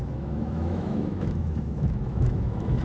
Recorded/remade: remade